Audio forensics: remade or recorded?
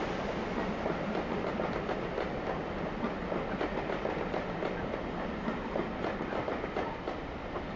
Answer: recorded